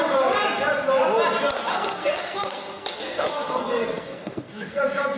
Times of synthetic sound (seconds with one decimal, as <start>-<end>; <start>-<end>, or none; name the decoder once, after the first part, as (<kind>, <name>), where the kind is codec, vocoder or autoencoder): 1.7-4.8 (codec, SNAC)